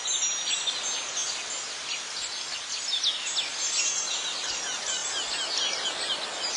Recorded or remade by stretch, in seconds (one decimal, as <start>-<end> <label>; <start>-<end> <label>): 0.0-6.6 recorded